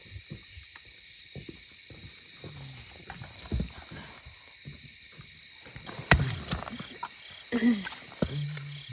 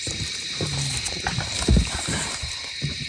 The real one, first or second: first